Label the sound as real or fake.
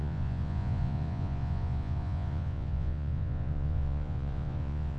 fake